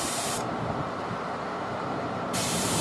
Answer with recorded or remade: remade